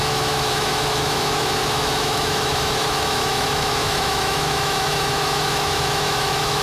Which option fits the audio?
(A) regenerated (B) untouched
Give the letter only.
A